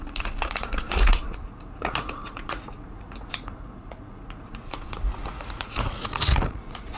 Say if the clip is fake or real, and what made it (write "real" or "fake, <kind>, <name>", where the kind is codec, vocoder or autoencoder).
fake, vocoder, Vocos